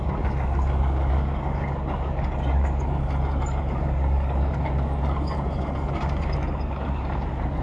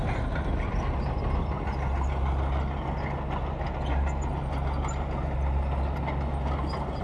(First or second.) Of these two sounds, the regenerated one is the first